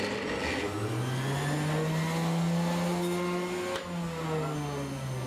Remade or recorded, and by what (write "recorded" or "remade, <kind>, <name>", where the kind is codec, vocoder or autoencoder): recorded